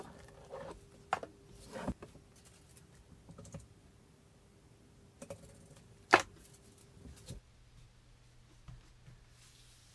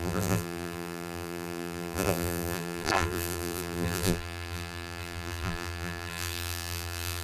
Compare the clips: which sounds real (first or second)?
first